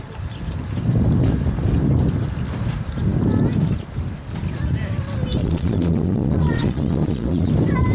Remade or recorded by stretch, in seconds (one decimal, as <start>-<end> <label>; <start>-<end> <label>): 0.0-5.4 recorded; 5.4-7.5 remade; 7.5-7.9 recorded